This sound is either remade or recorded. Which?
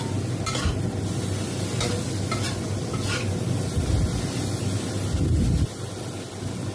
recorded